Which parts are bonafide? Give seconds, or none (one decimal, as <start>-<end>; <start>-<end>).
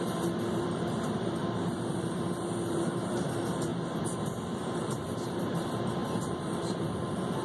3.7-4.2